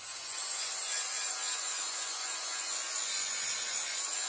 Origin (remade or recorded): remade